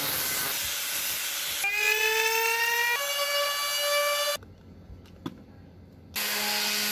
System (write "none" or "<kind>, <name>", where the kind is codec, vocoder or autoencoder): none